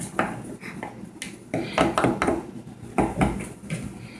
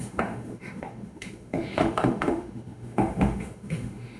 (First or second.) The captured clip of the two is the first